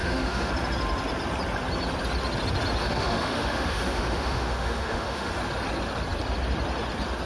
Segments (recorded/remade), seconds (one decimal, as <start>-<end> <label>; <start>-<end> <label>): 0.0-0.5 remade; 0.5-2.8 recorded; 2.8-5.3 remade; 5.3-7.3 recorded